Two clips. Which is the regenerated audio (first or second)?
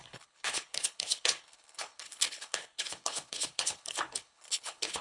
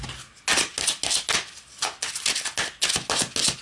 first